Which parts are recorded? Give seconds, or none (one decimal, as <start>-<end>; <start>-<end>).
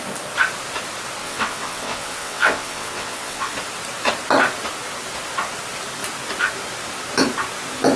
0.0-1.2; 3.5-8.0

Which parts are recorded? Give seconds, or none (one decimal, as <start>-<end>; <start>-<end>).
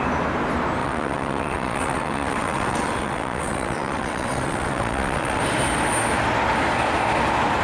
0.0-0.8; 5.4-7.6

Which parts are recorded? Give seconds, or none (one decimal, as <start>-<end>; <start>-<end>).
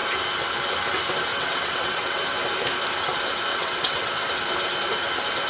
0.0-1.3; 2.2-3.5; 4.3-5.5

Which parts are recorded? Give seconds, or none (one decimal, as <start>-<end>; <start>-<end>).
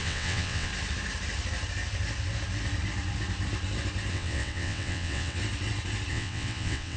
0.7-4.1; 5.4-6.1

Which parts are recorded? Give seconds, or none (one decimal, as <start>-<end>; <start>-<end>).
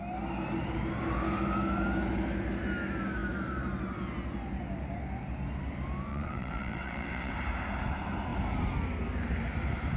0.0-6.1; 7.3-10.0